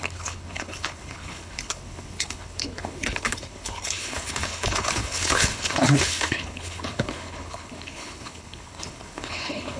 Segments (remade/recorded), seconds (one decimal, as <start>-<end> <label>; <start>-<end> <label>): 0.0-9.8 remade

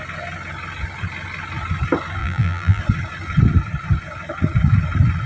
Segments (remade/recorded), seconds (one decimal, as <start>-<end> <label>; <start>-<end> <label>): 0.0-2.2 recorded; 2.2-2.8 remade; 2.8-5.3 recorded

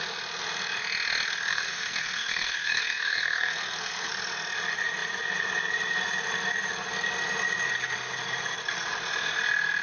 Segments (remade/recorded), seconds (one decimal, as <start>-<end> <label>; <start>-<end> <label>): 0.0-1.5 recorded; 1.5-4.1 remade; 4.1-9.8 recorded